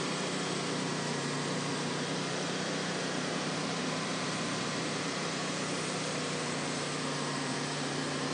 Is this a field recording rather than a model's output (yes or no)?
no